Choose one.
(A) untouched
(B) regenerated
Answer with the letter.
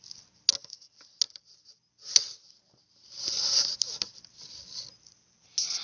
A